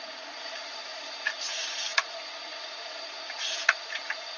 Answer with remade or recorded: remade